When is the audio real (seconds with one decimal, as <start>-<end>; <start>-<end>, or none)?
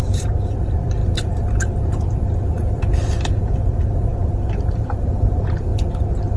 5.7-6.4